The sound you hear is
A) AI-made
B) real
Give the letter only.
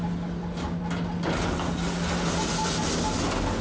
B